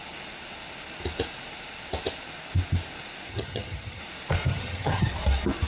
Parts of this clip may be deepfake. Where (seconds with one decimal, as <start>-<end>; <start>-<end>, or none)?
3.3-4.0; 4.5-5.1